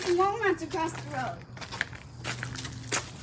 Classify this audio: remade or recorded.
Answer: recorded